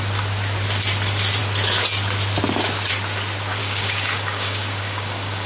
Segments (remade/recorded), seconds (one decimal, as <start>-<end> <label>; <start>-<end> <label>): 0.0-3.6 recorded; 3.6-5.5 remade